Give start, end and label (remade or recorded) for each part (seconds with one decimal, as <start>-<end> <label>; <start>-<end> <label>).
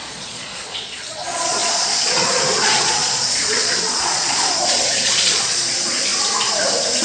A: 0.0-6.1 remade; 6.1-7.0 recorded